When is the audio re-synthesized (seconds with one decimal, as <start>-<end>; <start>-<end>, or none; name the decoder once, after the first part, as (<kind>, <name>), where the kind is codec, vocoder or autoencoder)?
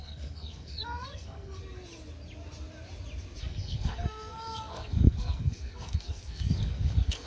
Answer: 0.0-1.6 (codec, SNAC); 3.4-7.3